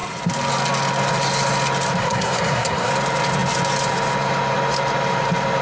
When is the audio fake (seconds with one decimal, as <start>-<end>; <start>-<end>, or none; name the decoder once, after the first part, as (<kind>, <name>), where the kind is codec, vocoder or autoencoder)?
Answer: 2.0-2.9 (codec, SNAC)